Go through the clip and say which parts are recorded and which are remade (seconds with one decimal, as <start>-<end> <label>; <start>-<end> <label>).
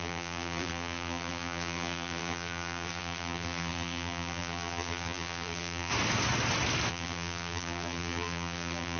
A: 0.0-5.9 remade; 5.9-6.9 recorded; 6.9-9.0 remade